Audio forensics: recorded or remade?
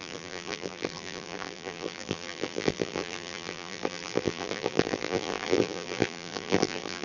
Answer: remade